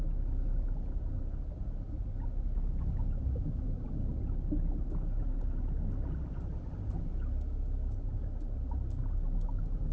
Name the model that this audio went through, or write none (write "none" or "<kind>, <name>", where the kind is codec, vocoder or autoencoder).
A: none